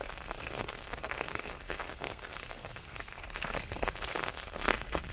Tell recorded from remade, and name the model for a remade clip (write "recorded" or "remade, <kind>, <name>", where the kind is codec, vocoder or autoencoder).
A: remade, codec, SNAC